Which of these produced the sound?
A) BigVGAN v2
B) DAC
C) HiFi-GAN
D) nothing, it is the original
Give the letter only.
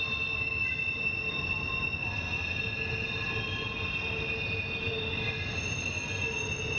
D